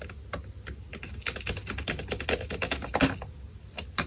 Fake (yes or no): no